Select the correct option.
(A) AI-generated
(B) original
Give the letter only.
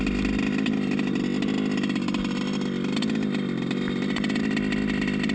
B